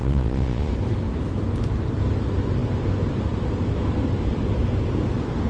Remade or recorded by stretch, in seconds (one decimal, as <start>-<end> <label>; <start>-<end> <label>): 0.0-0.7 remade; 0.7-5.5 recorded